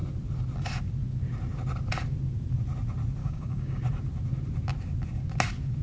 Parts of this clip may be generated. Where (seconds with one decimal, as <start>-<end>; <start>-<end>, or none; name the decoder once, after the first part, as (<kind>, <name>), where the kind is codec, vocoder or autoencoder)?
3.2-3.8 (codec, DAC)